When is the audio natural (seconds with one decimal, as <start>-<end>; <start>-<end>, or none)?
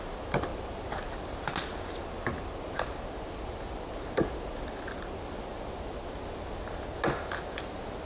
0.0-8.1